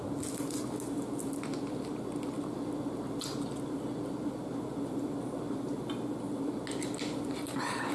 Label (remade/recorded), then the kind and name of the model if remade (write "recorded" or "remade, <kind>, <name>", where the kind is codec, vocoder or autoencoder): recorded